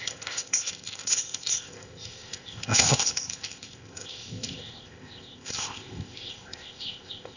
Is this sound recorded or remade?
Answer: remade